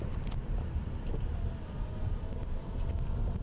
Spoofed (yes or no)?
yes